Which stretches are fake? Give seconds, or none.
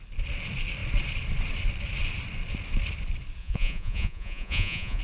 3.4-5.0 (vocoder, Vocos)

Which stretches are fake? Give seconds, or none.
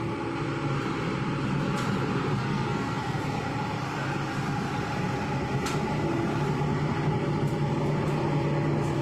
2.4-3.2 (codec, SNAC)